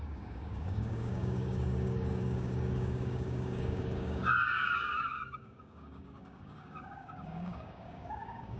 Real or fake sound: fake